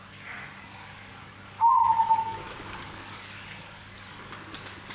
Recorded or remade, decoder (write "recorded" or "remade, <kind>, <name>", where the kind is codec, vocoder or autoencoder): remade, codec, DAC